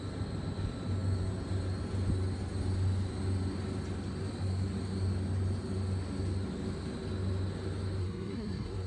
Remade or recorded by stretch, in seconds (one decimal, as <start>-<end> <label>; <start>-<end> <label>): 0.0-8.0 recorded; 8.0-8.9 remade